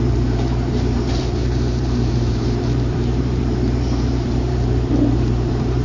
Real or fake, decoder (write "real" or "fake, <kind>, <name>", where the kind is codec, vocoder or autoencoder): fake, vocoder, BigVGAN v2